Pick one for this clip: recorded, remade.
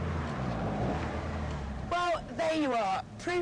remade